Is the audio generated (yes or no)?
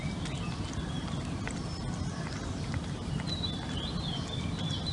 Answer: no